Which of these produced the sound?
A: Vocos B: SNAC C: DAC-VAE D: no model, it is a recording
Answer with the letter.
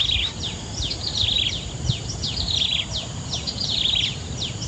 D